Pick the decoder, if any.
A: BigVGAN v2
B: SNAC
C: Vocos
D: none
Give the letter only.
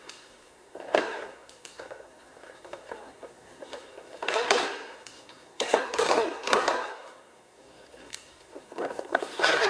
B